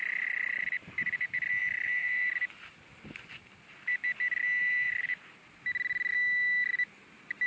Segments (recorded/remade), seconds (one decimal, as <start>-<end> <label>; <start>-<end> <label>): 0.0-1.6 recorded; 1.6-2.7 remade; 2.7-4.6 recorded; 4.6-5.3 remade; 5.3-7.5 recorded